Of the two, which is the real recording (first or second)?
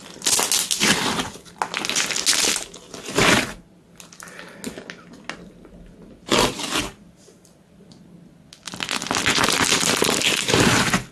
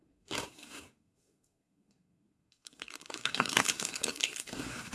first